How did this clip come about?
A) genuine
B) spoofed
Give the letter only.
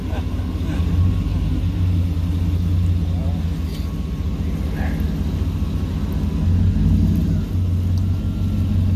A